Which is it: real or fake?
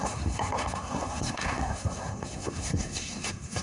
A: fake